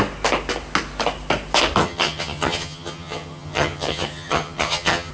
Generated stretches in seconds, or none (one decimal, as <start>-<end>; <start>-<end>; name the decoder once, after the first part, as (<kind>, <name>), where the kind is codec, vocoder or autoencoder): 1.8-5.1 (vocoder, HiFi-GAN)